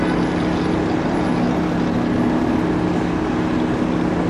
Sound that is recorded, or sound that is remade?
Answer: recorded